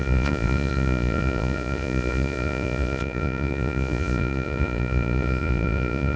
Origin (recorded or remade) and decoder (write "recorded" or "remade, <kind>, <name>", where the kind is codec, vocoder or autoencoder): remade, vocoder, Vocos